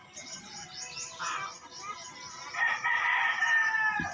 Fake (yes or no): no